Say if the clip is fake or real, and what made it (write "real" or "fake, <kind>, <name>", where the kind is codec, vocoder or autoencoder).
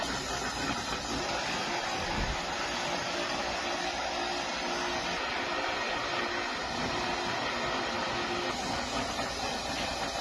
real